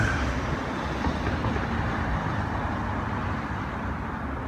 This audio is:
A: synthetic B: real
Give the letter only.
B